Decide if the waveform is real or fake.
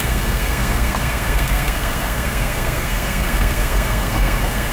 fake